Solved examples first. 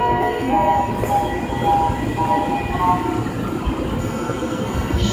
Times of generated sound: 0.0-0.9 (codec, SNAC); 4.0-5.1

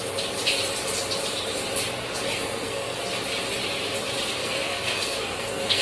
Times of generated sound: 2.3-3.0 (codec, SNAC); 4.4-5.8

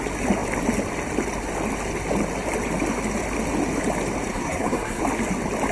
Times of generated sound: 4.3-5.0 (codec, SNAC)

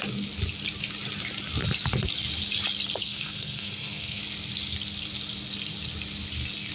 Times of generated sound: 3.0-4.2 (codec, SNAC)

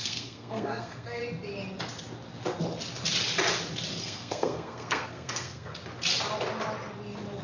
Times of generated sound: 0.0-1.2 (codec, SNAC); 4.0-5.7

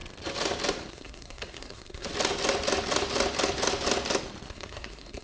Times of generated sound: 0.9-2.1 (codec, SNAC); 4.5-5.2

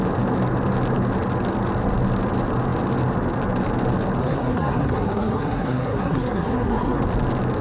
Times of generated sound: 4.2-7.0 (codec, SNAC)